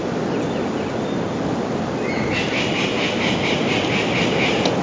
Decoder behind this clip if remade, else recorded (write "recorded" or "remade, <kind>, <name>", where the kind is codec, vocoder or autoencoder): recorded